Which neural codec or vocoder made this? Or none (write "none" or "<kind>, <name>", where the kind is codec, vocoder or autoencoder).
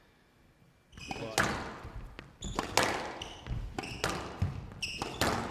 none